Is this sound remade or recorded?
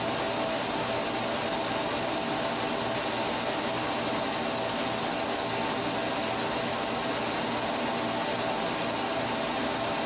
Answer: recorded